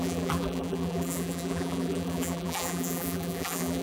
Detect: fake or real fake